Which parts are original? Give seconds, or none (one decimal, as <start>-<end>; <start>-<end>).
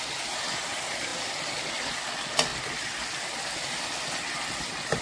0.0-5.0